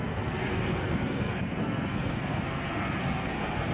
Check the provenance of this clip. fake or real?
fake